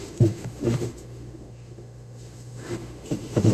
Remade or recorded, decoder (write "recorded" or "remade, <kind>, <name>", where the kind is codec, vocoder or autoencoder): remade, autoencoder, DAC-VAE